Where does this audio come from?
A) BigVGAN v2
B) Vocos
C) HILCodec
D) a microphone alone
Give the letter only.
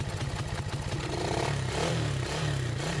D